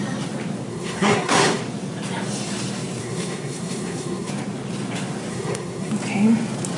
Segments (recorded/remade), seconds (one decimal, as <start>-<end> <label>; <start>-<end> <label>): 0.0-0.7 recorded; 0.7-1.6 remade; 1.6-3.0 recorded; 3.0-4.3 remade; 4.3-5.3 recorded; 5.3-5.9 remade; 5.9-6.8 recorded